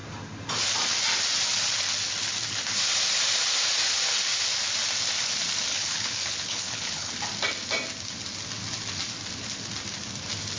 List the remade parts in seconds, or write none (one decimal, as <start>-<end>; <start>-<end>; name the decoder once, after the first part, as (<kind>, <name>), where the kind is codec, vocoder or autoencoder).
5.7-7.1 (codec, HILCodec)